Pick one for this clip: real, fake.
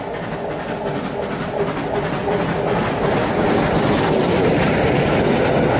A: real